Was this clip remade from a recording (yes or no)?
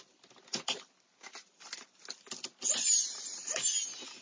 no